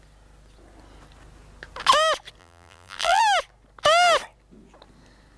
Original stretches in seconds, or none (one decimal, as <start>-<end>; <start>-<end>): 0.0-2.4; 3.2-5.4

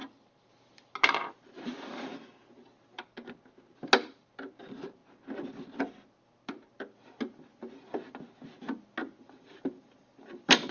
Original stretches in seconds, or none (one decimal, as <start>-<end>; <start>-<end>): 0.0-1.2; 2.1-4.6; 5.0-9.2

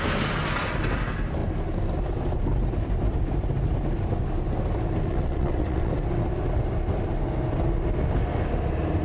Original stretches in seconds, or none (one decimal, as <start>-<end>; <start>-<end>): 0.0-5.1; 5.9-9.0

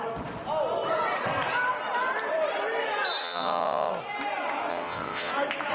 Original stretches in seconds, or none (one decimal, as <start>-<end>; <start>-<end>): 0.0-3.2; 3.9-4.7; 5.3-5.7

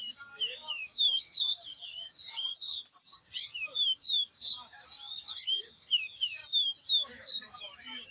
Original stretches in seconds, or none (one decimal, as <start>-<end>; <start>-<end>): 6.4-6.9

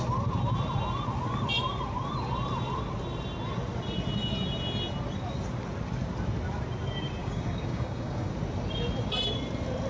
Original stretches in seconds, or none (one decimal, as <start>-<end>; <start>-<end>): 0.0-7.2; 8.3-9.9

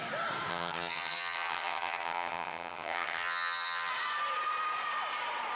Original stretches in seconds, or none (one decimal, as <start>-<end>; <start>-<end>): 0.0-0.5; 3.9-5.6